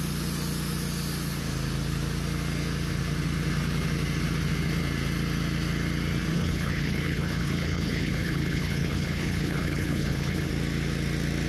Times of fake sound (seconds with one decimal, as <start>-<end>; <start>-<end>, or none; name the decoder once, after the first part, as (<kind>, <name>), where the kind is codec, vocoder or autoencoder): 6.3-10.5 (codec, HILCodec)